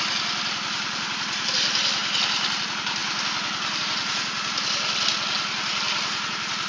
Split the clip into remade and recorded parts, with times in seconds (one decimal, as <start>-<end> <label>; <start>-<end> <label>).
0.0-6.7 recorded

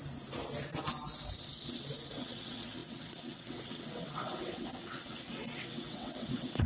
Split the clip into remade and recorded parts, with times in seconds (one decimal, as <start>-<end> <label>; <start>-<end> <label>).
0.0-2.1 recorded; 2.1-6.7 remade